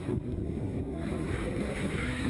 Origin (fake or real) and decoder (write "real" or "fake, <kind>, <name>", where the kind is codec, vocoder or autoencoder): fake, codec, SNAC